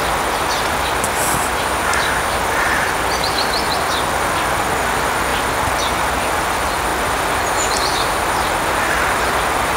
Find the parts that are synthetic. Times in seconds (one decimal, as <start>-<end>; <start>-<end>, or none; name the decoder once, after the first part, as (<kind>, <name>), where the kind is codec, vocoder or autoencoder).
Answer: none